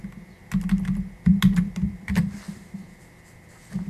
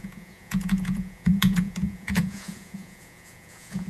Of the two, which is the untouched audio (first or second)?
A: first